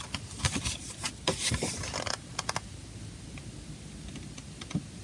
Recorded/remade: recorded